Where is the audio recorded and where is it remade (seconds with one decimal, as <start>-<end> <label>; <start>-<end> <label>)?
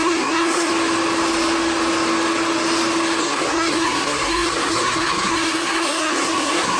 0.0-0.7 remade; 0.7-3.2 recorded; 3.2-6.8 remade